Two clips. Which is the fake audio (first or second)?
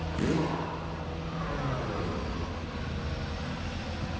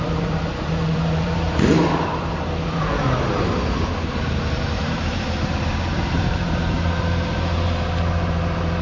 second